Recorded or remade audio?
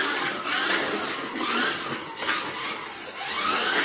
recorded